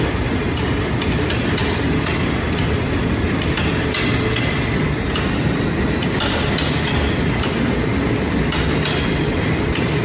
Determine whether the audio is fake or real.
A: real